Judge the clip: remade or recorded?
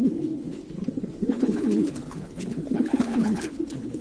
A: remade